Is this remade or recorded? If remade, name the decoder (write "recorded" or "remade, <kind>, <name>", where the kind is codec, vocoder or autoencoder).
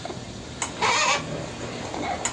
recorded